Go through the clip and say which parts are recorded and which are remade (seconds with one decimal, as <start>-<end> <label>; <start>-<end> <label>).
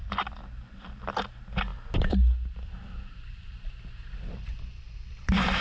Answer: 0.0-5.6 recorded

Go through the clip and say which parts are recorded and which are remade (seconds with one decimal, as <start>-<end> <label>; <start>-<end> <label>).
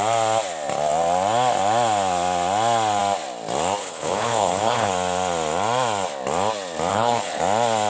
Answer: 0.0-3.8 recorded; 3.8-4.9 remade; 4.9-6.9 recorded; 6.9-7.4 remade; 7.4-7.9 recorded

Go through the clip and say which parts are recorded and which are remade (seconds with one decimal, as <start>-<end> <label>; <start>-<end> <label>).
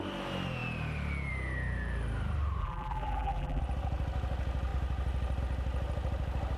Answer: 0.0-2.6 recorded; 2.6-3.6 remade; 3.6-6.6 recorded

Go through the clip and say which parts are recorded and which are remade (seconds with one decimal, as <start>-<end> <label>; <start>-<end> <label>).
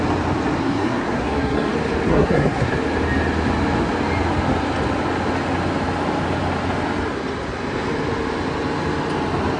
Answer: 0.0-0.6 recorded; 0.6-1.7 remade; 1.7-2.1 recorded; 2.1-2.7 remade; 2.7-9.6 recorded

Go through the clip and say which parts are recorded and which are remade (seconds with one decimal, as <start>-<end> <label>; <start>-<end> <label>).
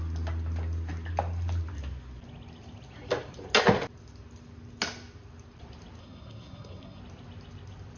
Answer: 0.0-6.0 recorded; 6.0-7.0 remade; 7.0-8.0 recorded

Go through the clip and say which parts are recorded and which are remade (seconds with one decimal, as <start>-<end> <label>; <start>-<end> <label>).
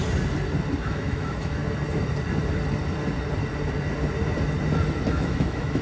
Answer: 0.0-0.8 recorded; 0.8-1.6 remade; 1.6-5.1 recorded; 5.1-5.8 remade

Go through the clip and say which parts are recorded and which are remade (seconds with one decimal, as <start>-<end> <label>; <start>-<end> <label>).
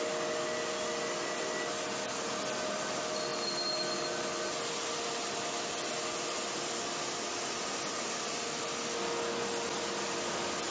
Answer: 0.0-10.7 recorded